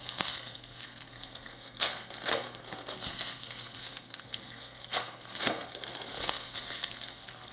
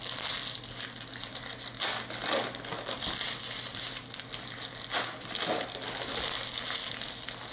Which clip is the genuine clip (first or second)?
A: second